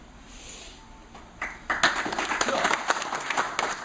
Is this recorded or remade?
recorded